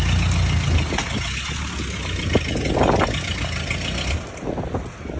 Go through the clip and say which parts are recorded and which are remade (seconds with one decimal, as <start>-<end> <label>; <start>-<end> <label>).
0.0-5.2 recorded